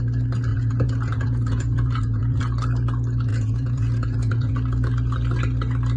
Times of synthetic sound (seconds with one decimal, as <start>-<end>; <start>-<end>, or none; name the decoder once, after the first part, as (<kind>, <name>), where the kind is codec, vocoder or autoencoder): 0.5-2.4 (vocoder, Vocos); 3.3-4.5